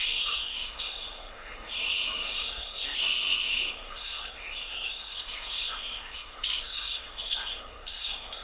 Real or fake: fake